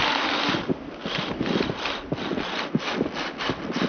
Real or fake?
real